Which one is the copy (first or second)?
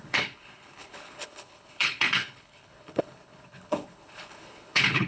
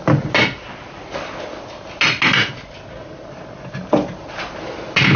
first